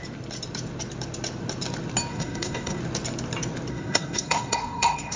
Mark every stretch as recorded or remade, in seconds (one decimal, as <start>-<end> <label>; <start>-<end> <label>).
0.0-2.1 recorded; 2.1-2.8 remade; 2.8-3.7 recorded; 3.7-5.2 remade